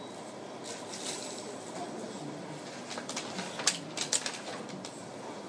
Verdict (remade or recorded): recorded